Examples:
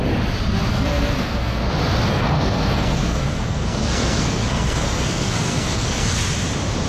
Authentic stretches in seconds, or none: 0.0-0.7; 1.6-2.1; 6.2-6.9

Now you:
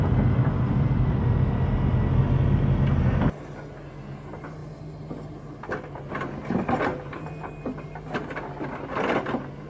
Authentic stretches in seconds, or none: 0.0-9.7

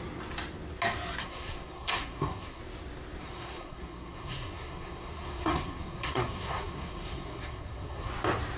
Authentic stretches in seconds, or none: 0.0-1.2; 2.6-3.2; 8.1-8.6

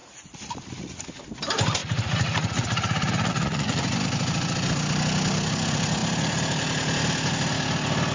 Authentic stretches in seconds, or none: 1.0-1.8; 3.8-8.1

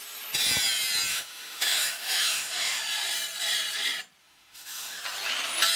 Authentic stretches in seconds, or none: 0.0-1.1; 2.8-4.2; 5.0-5.8

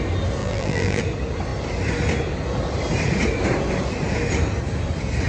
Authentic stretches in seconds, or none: 0.0-0.4; 1.0-5.3

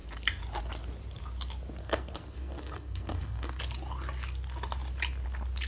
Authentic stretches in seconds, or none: 0.0-1.8; 3.6-5.7